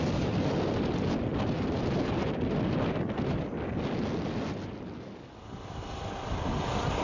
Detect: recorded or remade recorded